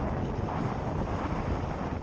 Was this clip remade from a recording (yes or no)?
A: no